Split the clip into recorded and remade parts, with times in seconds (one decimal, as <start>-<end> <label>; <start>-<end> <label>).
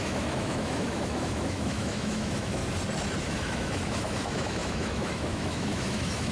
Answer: 0.0-2.6 remade; 2.6-3.2 recorded; 3.2-6.3 remade